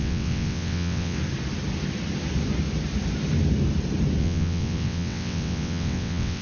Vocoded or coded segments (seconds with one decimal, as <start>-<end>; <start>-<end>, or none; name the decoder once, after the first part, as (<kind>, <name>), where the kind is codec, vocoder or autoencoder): 0.0-1.2 (vocoder, WaveNeXt); 4.2-6.4

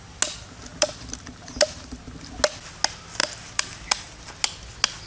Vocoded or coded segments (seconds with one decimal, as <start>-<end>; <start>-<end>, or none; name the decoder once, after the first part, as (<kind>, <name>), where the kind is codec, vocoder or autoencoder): 0.7-2.0 (vocoder, BigVGAN v2); 3.2-4.3

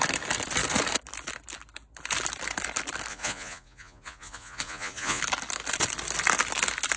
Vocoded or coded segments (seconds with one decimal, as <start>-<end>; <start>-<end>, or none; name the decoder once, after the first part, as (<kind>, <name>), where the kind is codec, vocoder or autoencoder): 3.1-5.2 (vocoder, Vocos)

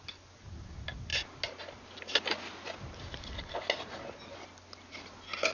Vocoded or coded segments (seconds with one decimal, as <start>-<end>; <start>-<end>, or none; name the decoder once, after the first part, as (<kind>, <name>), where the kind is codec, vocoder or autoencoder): none

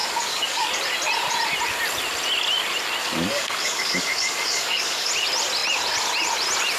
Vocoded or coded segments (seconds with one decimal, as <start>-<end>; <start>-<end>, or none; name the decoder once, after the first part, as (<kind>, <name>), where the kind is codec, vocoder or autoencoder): 0.0-0.7 (codec, DAC); 3.0-5.1

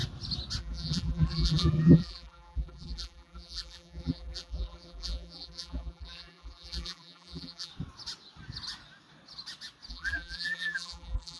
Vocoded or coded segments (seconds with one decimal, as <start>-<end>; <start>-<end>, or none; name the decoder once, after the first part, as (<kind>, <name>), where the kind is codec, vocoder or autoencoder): 0.6-7.7 (vocoder, BigVGAN v2); 9.9-11.4

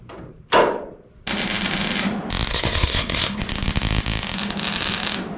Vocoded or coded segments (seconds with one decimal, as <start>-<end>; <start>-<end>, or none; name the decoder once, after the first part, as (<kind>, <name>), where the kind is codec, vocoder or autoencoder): 2.5-3.4 (codec, SNAC)

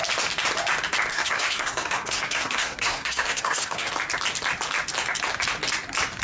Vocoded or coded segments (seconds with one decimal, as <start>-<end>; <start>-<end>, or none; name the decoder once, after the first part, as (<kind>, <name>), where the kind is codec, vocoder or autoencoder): 1.1-3.9 (codec, SNAC)